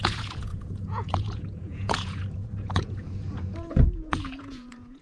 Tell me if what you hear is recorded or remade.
remade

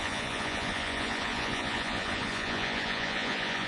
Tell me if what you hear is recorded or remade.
remade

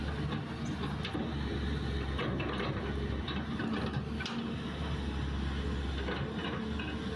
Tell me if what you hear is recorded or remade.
recorded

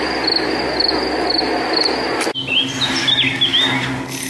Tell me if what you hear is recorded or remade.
recorded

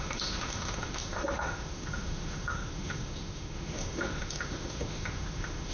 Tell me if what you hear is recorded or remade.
remade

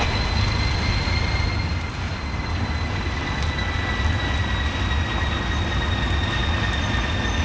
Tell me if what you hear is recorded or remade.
recorded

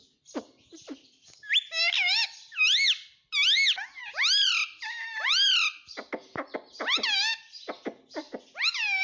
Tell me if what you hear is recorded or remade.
remade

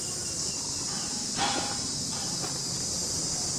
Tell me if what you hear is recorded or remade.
recorded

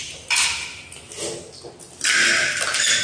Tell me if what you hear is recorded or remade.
recorded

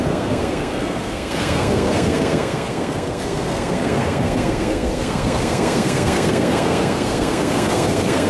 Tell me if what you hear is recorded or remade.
remade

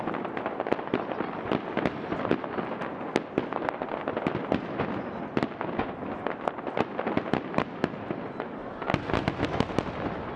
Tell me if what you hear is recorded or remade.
recorded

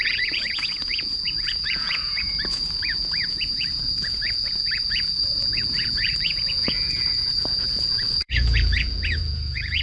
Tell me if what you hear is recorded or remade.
remade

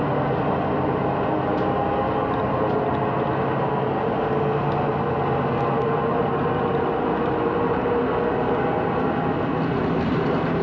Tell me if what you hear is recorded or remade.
recorded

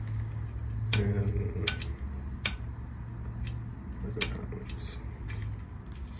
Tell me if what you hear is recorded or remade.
recorded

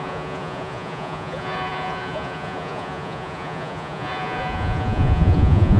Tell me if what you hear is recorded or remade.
remade